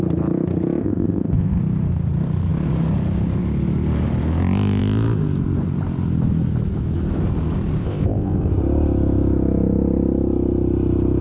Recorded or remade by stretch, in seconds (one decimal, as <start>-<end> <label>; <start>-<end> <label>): 0.0-0.8 recorded; 0.8-1.6 remade; 1.6-7.8 recorded; 7.8-8.5 remade; 8.5-11.2 recorded